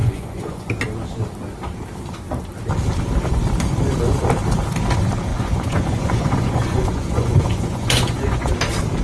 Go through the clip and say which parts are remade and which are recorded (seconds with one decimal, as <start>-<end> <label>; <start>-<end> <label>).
0.0-0.7 remade; 0.7-5.3 recorded; 5.3-8.5 remade; 8.5-9.0 recorded